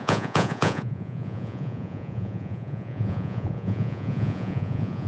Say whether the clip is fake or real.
fake